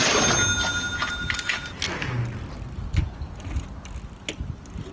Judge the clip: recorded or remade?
recorded